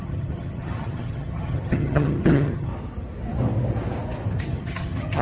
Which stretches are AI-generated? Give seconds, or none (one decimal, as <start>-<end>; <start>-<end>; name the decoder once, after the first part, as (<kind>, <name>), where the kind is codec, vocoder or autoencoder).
0.0-2.7 (vocoder, HiFi-GAN); 4.4-5.2